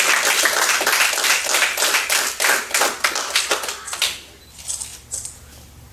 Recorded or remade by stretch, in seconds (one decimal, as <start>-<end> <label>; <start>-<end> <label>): 0.0-5.9 recorded